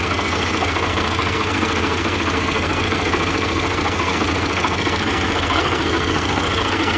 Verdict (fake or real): fake